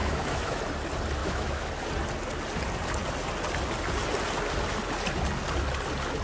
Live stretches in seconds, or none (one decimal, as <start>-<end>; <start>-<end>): 0.6-1.2; 1.7-6.2